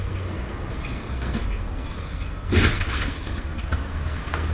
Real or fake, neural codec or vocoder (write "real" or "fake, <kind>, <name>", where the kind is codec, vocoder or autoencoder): fake, codec, SNAC